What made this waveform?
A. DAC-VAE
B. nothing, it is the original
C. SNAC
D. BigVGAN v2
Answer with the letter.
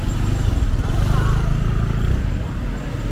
B